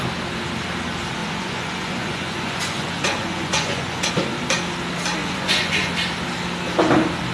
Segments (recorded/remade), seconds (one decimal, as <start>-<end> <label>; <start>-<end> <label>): 0.0-1.2 recorded; 1.2-4.1 remade; 4.1-5.2 recorded; 5.2-5.9 remade; 5.9-7.3 recorded